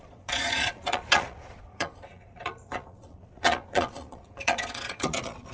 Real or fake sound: fake